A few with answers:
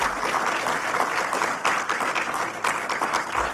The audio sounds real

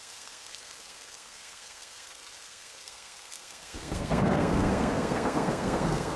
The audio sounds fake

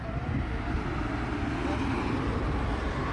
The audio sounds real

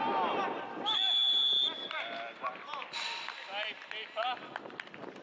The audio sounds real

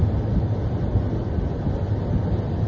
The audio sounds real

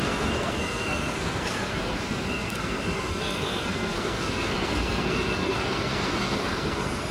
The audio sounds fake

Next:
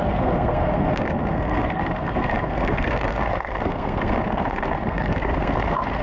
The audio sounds fake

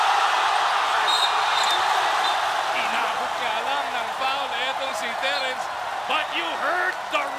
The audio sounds real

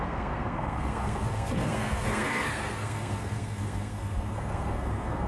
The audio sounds fake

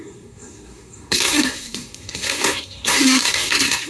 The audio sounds fake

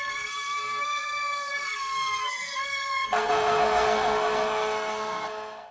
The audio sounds fake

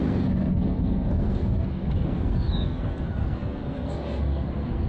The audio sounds fake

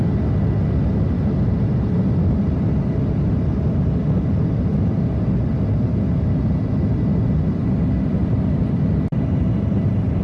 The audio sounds real